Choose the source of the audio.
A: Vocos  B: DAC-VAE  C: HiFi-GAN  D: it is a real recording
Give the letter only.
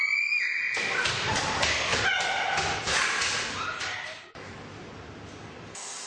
D